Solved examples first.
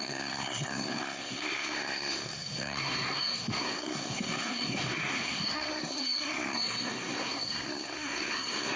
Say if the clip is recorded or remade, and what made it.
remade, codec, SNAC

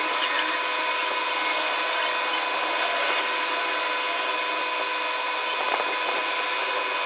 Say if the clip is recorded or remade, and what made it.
recorded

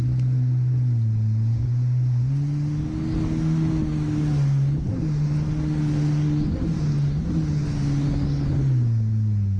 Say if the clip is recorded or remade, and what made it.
recorded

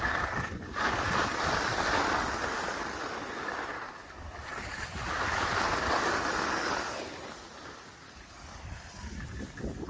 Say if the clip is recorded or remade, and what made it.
recorded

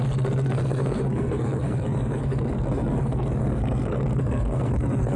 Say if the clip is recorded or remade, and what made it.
remade, codec, SNAC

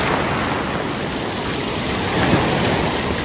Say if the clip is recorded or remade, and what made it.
recorded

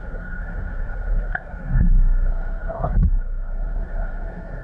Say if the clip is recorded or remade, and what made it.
remade, codec, SNAC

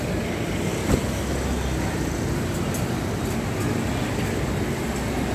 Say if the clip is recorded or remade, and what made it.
recorded